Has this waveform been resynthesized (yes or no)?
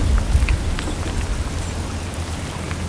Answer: no